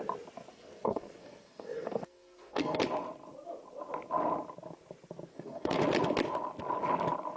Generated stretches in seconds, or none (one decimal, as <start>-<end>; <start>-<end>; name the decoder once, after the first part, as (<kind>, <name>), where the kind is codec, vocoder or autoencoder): 0.5-2.8 (codec, SNAC); 5.3-5.8